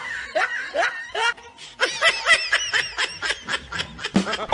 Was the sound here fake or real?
real